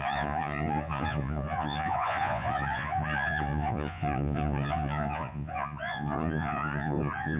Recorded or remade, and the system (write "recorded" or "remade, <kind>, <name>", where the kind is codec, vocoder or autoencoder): remade, vocoder, Vocos